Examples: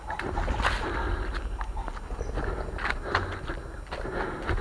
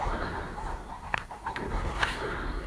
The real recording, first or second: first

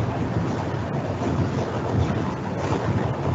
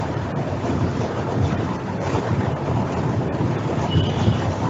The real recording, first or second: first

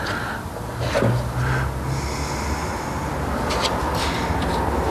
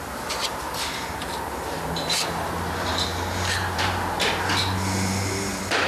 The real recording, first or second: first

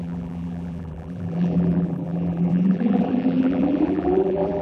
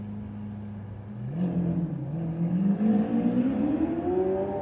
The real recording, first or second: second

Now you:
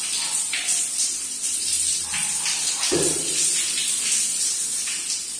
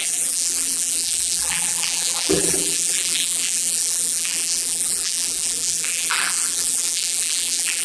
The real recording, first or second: first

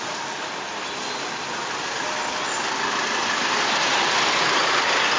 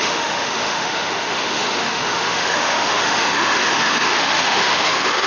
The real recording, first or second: first